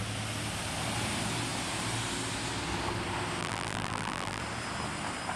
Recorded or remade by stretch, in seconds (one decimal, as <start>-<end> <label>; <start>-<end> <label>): 0.0-3.4 recorded; 3.4-4.4 remade; 4.4-5.4 recorded